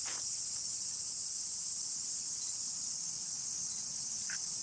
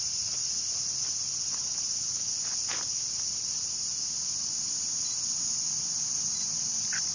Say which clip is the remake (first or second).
first